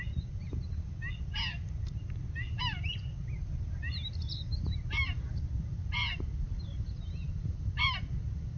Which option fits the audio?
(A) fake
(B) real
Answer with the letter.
B